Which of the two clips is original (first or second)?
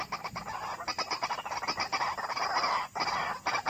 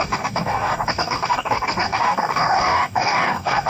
first